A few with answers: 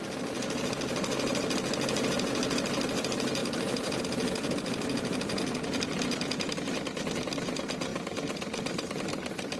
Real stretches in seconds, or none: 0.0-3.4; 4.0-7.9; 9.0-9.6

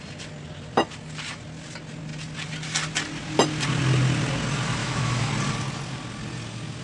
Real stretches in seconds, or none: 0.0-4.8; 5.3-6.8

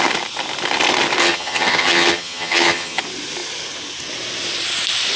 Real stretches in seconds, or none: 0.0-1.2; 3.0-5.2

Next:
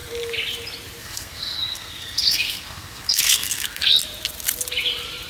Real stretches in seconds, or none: 0.0-1.0; 3.9-5.3